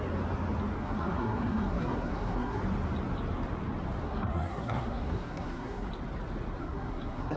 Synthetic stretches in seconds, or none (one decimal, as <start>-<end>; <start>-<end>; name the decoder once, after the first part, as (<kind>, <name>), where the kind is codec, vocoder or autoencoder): 0.8-2.6 (codec, SNAC); 4.0-5.9; 6.6-7.4